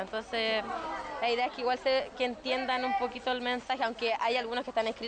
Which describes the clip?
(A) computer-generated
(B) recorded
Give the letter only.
B